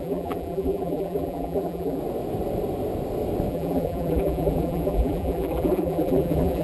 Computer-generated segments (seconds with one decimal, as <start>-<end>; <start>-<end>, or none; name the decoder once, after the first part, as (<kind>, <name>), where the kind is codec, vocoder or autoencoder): 0.0-2.0 (vocoder, BigVGAN v2); 3.5-6.6